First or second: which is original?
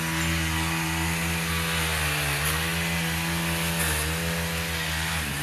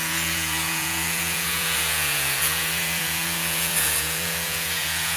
first